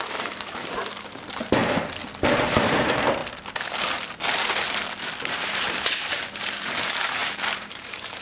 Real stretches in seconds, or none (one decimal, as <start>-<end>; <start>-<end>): 1.6-2.2; 3.2-5.4